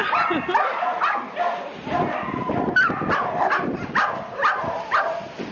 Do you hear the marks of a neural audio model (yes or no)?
no